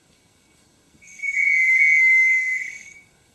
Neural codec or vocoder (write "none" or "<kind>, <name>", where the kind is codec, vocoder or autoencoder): codec, SNAC